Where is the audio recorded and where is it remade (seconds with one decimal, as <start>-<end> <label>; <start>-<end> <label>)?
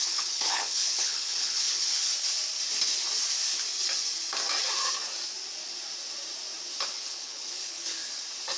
0.0-2.0 remade; 2.0-6.9 recorded; 6.9-8.0 remade; 8.0-8.6 recorded